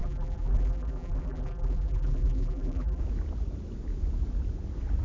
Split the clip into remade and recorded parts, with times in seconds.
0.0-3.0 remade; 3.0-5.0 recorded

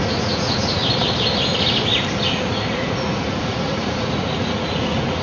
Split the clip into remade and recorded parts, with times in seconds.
0.0-0.8 remade; 0.8-2.7 recorded; 2.7-5.2 remade

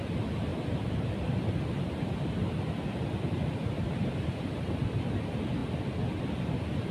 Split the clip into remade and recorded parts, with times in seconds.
0.0-6.9 recorded

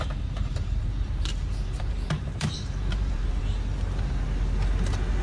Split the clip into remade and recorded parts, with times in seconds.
0.0-0.4 recorded; 0.4-3.4 remade; 3.4-5.2 recorded

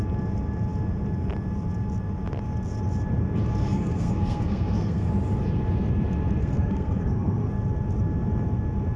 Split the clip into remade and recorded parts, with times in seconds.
0.0-3.6 recorded; 3.6-5.1 remade; 5.1-6.4 recorded; 6.4-7.5 remade; 7.5-9.0 recorded